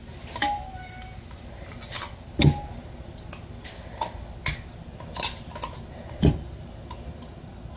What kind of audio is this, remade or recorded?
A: recorded